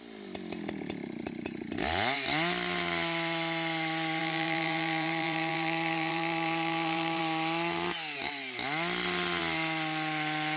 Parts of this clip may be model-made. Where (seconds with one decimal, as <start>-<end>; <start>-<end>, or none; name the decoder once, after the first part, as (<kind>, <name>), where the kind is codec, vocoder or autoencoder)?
4.2-7.2 (vocoder, BigVGAN v2)